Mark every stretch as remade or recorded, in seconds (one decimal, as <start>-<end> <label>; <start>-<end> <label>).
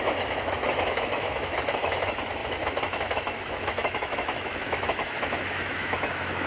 0.0-6.5 remade